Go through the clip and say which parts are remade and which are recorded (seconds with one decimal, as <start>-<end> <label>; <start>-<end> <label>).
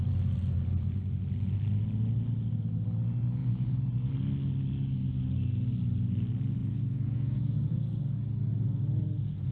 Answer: 0.0-3.4 recorded; 3.4-4.1 remade; 4.1-6.6 recorded; 6.6-8.0 remade; 8.0-9.5 recorded